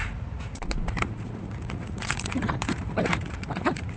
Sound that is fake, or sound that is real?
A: fake